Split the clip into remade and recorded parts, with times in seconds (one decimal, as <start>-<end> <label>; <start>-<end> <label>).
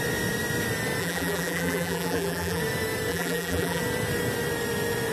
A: 0.0-1.0 recorded; 1.0-2.6 remade; 2.6-3.1 recorded; 3.1-3.8 remade; 3.8-5.1 recorded